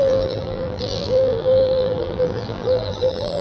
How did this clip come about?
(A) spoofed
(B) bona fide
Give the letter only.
A